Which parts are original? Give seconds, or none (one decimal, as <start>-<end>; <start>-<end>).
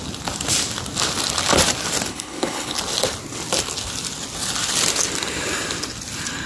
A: 0.0-2.1; 2.8-6.5